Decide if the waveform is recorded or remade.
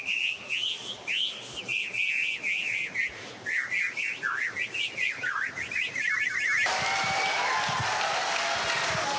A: recorded